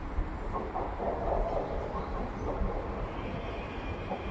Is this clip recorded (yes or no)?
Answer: no